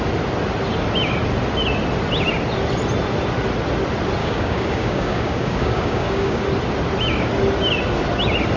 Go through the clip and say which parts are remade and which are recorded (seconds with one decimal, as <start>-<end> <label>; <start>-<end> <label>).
0.0-4.2 recorded; 4.2-6.4 remade; 6.4-8.6 recorded